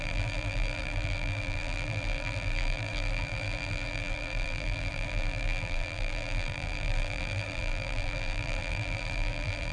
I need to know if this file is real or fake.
fake